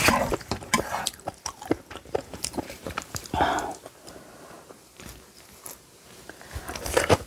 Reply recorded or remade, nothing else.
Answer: remade